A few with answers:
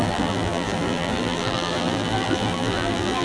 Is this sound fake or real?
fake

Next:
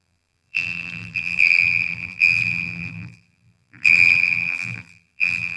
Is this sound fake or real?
fake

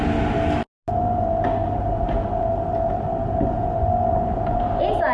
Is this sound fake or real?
real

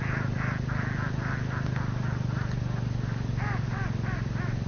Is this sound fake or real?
real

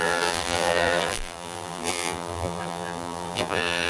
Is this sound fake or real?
fake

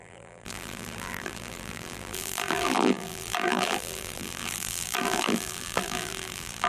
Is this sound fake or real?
fake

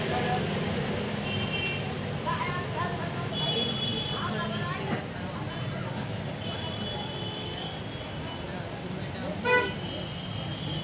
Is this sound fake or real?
real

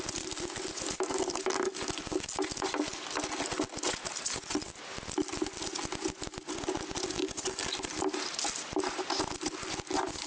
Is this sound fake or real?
real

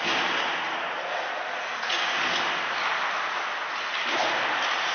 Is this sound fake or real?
real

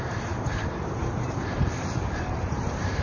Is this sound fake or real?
fake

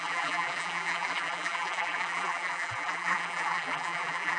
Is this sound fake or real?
fake